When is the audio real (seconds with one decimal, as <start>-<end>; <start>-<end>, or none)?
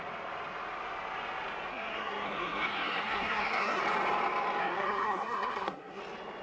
0.0-1.7; 3.8-4.6; 6.0-6.4